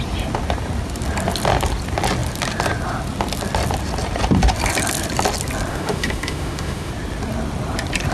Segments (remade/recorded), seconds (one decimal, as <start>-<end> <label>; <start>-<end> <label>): 0.0-5.7 recorded; 5.7-6.9 remade; 6.9-8.1 recorded

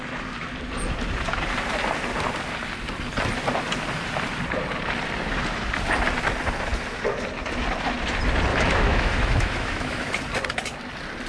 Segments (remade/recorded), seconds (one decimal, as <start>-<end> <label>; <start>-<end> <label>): 0.0-8.5 recorded; 8.5-10.1 remade; 10.1-11.3 recorded

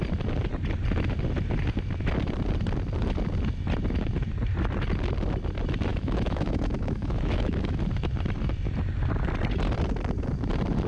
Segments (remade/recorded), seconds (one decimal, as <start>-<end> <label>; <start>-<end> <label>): 0.0-5.9 recorded; 5.9-7.8 remade; 7.8-10.9 recorded

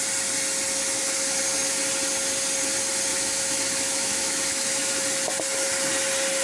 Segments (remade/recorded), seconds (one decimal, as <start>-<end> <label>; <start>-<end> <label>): 0.0-0.8 recorded; 0.8-1.4 remade; 1.4-3.1 recorded; 3.1-4.9 remade; 4.9-6.4 recorded